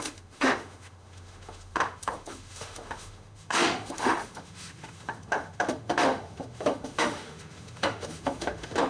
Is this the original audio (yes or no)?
no